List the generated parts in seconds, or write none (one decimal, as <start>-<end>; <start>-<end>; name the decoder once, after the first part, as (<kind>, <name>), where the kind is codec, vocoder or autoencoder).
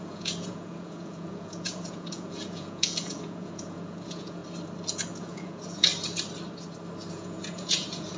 0.0-4.4 (vocoder, Vocos); 5.1-5.9; 7.1-8.2